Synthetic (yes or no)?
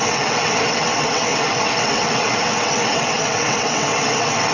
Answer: yes